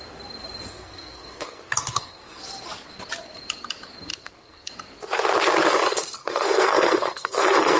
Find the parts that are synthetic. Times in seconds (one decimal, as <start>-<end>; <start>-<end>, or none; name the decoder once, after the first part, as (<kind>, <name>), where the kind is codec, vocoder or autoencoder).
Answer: 0.7-2.4 (codec, SNAC); 4.1-4.7; 6.2-7.8